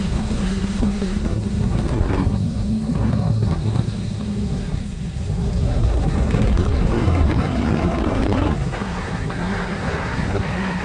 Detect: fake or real fake